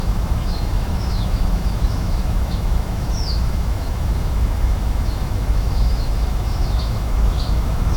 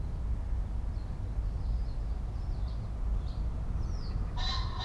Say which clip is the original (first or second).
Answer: second